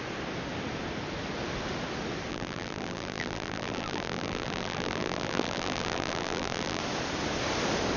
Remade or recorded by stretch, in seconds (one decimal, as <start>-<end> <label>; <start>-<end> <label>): 0.0-2.3 recorded; 2.3-6.8 remade; 6.8-8.0 recorded